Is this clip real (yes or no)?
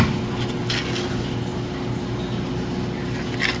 yes